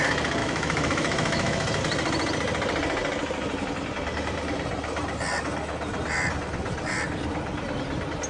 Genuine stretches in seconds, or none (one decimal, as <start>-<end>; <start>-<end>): 0.0-0.4; 1.8-8.3